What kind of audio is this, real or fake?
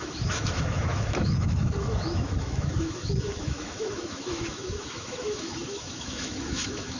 fake